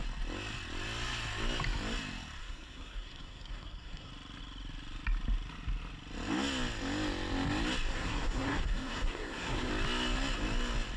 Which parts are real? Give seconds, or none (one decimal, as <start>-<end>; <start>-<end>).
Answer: 0.0-2.4; 4.1-7.9; 9.7-11.0